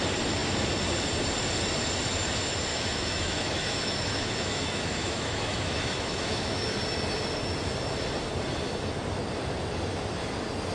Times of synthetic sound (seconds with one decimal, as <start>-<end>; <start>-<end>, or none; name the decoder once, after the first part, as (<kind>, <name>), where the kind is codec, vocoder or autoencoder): 2.7-6.7 (autoencoder, DAC-VAE)